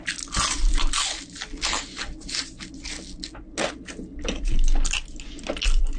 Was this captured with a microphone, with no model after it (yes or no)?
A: yes